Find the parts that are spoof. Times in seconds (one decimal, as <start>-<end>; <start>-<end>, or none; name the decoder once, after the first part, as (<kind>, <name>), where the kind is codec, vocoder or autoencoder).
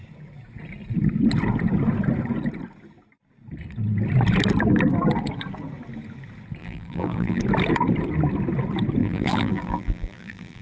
6.6-7.4 (vocoder, BigVGAN v2); 9.0-10.6